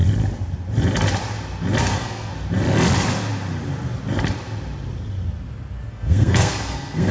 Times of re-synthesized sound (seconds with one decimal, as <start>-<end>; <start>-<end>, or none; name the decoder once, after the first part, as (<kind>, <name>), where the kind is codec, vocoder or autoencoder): 1.8-2.3 (codec, SNAC); 5.9-7.1